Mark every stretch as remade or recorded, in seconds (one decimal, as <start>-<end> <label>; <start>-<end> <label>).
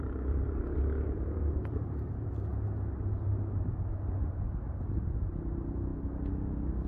0.0-2.5 remade; 2.5-4.8 recorded; 4.8-5.9 remade; 5.9-6.9 recorded